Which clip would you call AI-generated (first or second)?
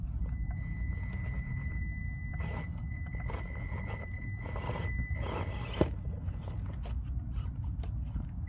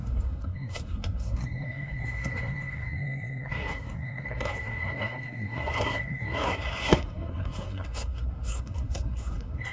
second